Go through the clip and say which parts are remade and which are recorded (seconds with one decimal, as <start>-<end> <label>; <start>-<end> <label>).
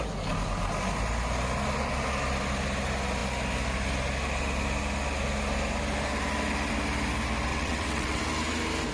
0.0-7.5 recorded; 7.5-8.2 remade; 8.2-8.9 recorded